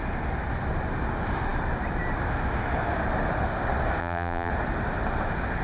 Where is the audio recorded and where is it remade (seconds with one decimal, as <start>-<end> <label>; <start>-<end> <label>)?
0.0-4.0 recorded; 4.0-4.5 remade; 4.5-5.6 recorded

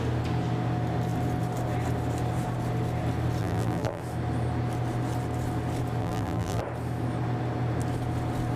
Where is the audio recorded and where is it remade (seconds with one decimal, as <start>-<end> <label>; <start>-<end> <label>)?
0.0-3.4 recorded; 3.4-4.0 remade; 4.0-6.0 recorded; 6.0-6.6 remade; 6.6-8.6 recorded

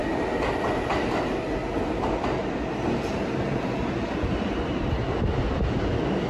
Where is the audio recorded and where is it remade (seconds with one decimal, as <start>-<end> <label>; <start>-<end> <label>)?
0.0-6.3 recorded

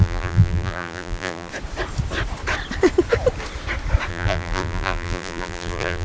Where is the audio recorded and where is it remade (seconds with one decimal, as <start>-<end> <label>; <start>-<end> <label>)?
0.0-1.5 remade; 1.5-4.1 recorded; 4.1-6.0 remade